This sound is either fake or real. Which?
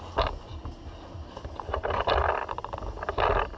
real